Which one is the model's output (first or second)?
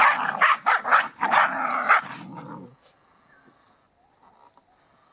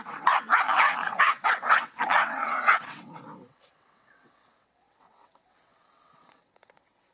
second